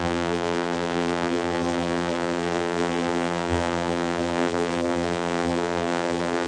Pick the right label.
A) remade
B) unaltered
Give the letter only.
A